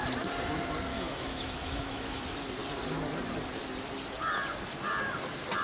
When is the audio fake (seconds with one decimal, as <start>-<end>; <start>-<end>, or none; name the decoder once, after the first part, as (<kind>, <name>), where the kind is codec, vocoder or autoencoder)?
0.9-2.2 (autoencoder, DAC-VAE)